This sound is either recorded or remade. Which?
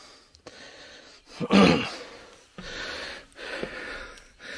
recorded